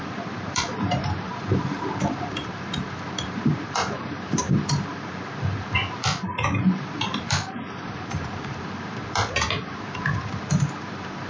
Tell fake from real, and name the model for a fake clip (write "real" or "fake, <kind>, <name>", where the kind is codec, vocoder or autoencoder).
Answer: fake, vocoder, BigVGAN v2